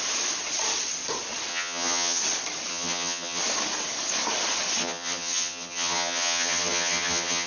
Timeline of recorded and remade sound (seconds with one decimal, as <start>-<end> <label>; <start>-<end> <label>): 0.0-1.5 recorded; 1.5-2.2 remade; 2.2-2.7 recorded; 2.7-3.4 remade; 3.4-4.8 recorded; 4.8-7.5 remade